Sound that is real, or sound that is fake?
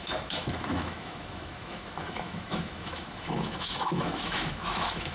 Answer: fake